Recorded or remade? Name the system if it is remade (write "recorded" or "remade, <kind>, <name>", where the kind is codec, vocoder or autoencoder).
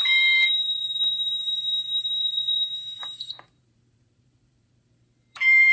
remade, vocoder, BigVGAN v2